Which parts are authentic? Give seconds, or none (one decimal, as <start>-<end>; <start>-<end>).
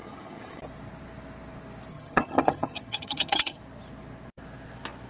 0.6-1.9; 3.6-5.1